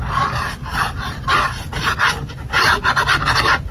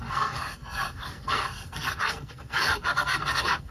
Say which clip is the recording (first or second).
first